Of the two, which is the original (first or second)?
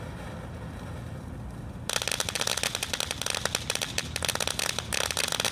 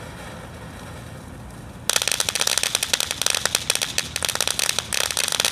second